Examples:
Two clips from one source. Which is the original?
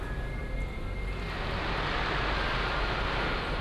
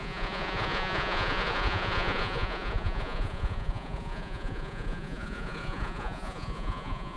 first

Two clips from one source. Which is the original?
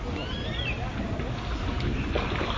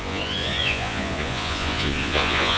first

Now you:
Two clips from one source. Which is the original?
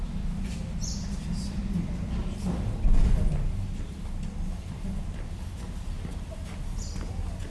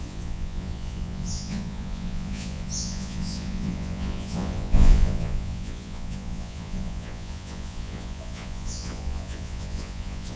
first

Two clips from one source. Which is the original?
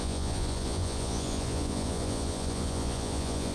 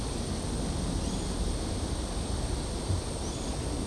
second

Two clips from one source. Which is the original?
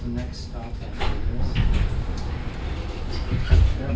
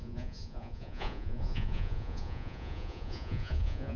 first